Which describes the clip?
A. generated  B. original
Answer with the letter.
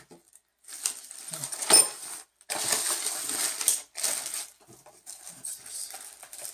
B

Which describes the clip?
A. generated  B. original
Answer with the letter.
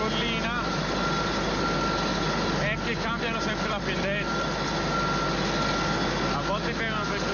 B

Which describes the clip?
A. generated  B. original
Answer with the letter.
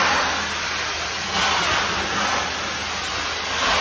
B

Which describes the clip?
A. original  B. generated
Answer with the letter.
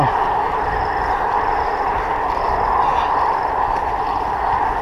A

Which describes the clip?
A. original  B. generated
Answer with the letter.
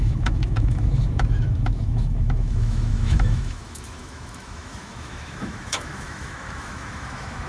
B